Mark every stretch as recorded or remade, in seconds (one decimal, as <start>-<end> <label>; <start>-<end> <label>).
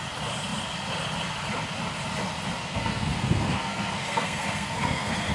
0.0-2.6 recorded; 2.6-5.3 remade